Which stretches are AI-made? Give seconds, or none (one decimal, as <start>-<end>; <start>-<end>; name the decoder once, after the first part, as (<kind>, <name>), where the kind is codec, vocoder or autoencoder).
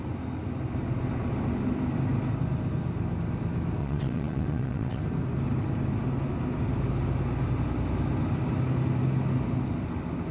3.8-5.0 (vocoder, WaveNeXt)